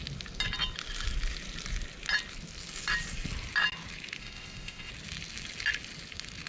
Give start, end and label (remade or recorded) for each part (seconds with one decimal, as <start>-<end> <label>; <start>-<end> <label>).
0.0-4.2 recorded; 4.2-4.9 remade; 4.9-6.5 recorded